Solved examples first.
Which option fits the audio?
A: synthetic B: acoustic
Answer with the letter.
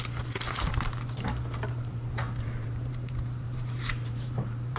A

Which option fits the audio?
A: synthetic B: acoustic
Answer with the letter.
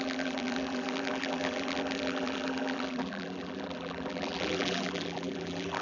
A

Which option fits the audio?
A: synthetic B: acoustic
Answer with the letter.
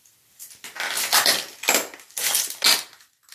B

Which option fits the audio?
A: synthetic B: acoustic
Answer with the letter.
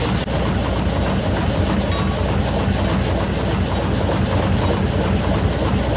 B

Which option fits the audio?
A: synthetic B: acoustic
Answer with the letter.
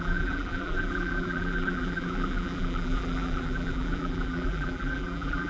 A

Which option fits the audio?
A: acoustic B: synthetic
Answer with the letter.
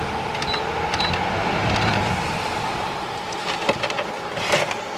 B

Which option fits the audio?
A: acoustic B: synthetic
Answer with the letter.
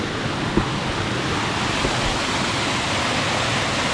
A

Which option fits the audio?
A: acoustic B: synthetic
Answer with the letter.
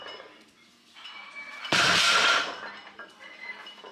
B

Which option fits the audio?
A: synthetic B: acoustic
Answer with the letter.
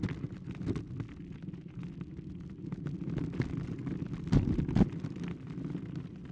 B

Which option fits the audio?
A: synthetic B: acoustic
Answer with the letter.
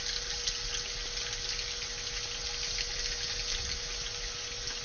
B